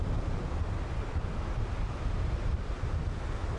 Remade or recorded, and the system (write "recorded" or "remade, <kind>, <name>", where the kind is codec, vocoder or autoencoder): recorded